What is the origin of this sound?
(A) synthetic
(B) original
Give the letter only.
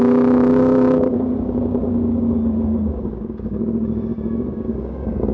A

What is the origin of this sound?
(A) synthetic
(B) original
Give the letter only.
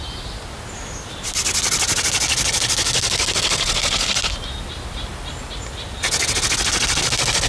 B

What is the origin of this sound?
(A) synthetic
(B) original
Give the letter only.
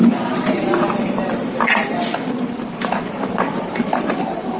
A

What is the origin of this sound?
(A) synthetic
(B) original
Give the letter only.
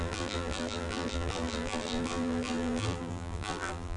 A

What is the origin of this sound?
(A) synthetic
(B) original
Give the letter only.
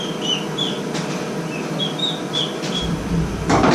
A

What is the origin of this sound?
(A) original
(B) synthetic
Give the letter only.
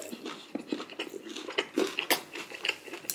A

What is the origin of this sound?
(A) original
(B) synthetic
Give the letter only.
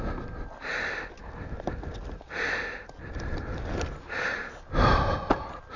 A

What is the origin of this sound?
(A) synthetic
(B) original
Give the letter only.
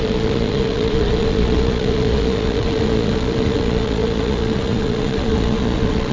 A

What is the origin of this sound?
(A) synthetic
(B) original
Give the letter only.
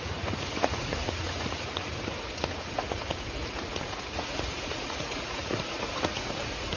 A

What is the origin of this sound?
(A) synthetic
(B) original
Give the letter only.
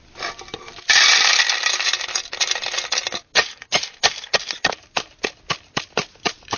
B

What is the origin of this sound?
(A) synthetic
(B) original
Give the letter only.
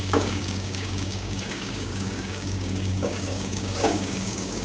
A